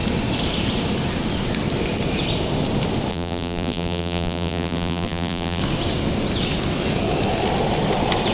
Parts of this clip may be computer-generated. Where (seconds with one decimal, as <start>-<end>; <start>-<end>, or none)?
3.1-5.6